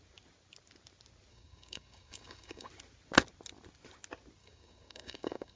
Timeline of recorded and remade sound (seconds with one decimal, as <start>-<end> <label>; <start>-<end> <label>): 0.0-1.3 recorded; 1.3-2.7 remade; 2.7-4.4 recorded; 4.4-5.6 remade